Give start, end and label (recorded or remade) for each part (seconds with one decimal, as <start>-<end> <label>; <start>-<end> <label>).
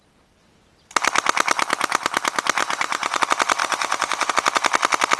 0.0-2.6 recorded; 2.6-3.2 remade; 3.2-3.6 recorded; 3.6-4.3 remade; 4.3-5.2 recorded